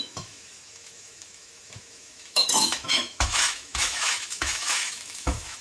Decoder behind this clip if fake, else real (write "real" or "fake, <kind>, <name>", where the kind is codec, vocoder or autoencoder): fake, autoencoder, DAC-VAE